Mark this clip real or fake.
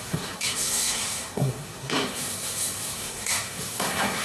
fake